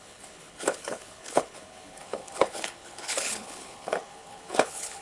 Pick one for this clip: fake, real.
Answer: fake